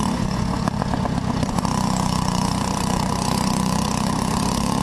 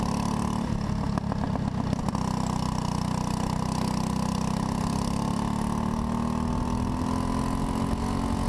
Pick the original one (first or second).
second